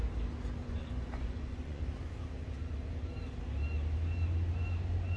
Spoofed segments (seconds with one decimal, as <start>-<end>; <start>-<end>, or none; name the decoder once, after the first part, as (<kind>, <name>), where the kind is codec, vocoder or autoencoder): 0.6-1.8 (vocoder, Vocos)